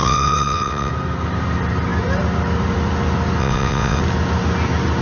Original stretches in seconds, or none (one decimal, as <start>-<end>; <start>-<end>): 0.9-3.4; 4.0-5.0